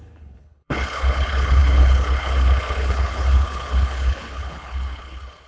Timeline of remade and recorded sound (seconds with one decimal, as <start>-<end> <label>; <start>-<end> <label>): 0.0-5.5 remade